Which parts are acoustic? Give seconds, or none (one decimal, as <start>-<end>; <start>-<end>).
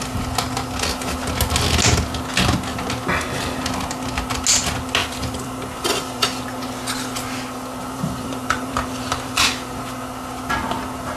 0.0-5.0; 6.2-7.8; 9.4-11.2